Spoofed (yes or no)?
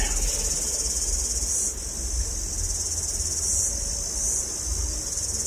no